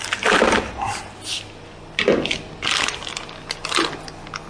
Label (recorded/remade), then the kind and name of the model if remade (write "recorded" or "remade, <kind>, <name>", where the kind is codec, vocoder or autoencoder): recorded